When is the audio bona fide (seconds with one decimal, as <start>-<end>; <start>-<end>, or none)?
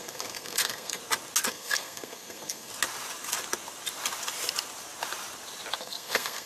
1.0-1.5; 2.7-5.8